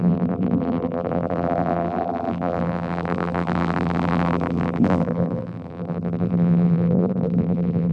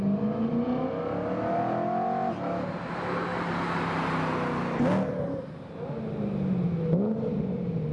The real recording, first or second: second